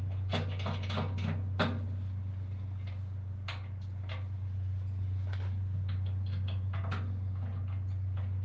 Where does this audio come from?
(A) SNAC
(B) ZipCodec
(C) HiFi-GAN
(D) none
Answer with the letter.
D